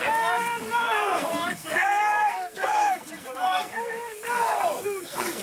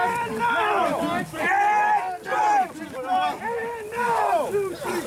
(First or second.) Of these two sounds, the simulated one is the first